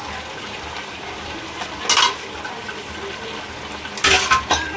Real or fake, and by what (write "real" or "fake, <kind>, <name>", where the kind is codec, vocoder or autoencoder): real